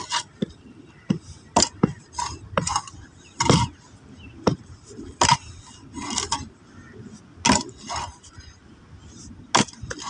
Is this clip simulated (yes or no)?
no